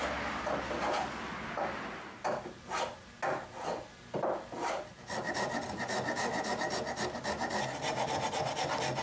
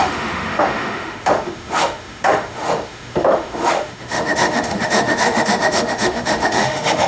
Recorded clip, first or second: first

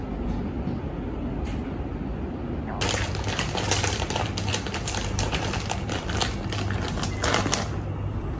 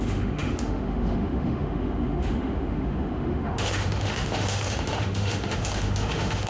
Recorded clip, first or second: first